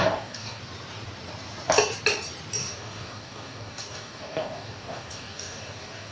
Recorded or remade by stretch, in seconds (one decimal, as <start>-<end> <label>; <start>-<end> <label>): 0.0-0.6 remade; 0.6-2.6 recorded; 2.6-6.1 remade

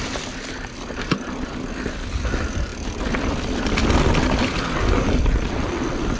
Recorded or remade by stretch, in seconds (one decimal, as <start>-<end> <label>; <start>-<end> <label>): 0.0-6.2 recorded